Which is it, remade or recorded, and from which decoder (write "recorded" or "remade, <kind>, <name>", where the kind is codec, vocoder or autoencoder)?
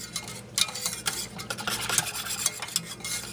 recorded